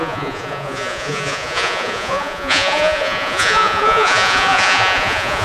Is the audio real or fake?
fake